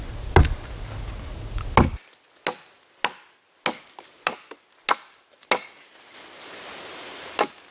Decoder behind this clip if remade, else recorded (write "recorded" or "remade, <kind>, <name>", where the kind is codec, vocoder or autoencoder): recorded